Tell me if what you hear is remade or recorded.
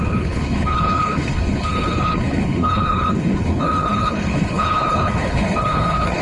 remade